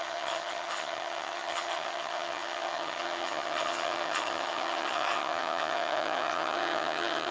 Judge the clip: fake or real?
fake